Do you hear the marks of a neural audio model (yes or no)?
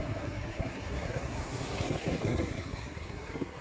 yes